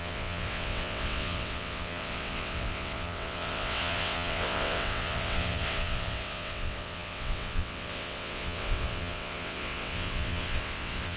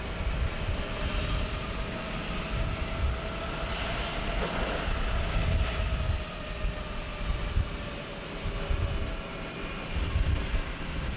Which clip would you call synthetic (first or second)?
first